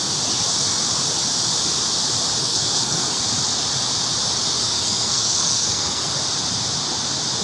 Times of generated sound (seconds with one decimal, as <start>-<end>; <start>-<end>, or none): 2.4-3.2; 4.6-6.1